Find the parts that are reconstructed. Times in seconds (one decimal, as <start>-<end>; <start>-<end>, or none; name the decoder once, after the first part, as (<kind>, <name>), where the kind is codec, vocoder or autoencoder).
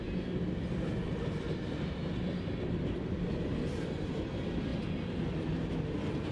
none